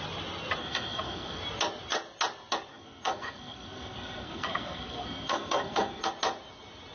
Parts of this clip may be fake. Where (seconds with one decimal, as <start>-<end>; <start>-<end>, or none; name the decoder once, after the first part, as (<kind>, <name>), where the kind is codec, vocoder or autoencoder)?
0.6-1.4 (codec, SNAC); 2.7-6.1